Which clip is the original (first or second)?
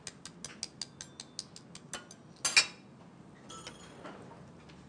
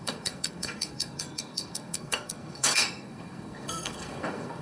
first